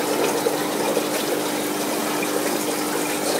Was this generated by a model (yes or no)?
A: no